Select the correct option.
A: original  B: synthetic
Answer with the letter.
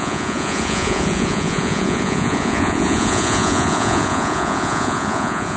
B